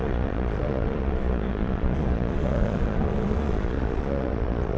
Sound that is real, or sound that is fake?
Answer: fake